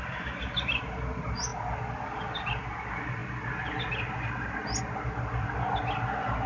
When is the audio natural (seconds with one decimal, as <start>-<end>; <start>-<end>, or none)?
0.0-6.5